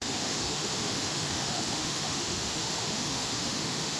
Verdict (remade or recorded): remade